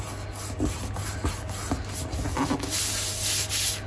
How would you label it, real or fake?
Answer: real